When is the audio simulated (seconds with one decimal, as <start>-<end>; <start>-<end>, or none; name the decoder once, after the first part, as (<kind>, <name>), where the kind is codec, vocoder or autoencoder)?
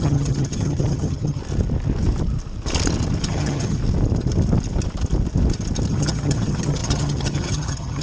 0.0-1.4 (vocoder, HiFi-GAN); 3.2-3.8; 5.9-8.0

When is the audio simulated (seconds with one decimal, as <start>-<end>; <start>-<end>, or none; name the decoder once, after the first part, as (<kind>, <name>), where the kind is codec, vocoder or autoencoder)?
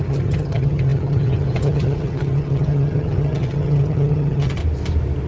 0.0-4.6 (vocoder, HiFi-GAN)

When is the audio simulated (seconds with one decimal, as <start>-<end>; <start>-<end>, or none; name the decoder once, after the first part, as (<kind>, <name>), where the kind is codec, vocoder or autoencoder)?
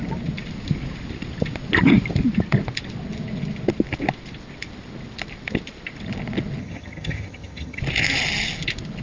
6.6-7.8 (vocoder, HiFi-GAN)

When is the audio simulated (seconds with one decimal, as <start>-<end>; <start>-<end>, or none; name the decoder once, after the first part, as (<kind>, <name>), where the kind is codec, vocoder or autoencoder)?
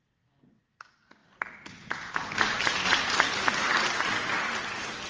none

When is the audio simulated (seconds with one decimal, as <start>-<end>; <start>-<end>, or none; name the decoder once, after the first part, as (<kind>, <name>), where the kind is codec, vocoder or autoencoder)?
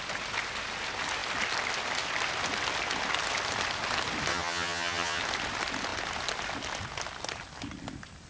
4.3-5.2 (vocoder, HiFi-GAN)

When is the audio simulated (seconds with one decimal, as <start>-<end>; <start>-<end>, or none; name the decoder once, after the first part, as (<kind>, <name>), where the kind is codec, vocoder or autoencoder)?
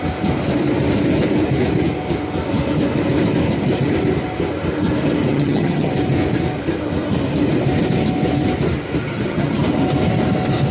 5.3-5.9 (vocoder, HiFi-GAN); 9.0-9.6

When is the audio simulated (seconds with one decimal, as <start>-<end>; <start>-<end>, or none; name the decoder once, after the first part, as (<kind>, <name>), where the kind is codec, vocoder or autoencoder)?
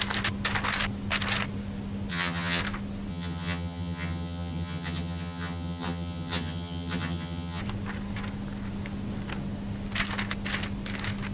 2.1-2.6 (vocoder, HiFi-GAN); 3.1-7.6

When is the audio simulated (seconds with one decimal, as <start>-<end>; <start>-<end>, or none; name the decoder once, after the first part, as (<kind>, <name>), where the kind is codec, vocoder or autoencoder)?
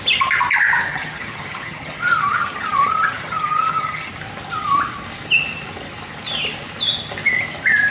0.9-4.1 (vocoder, HiFi-GAN)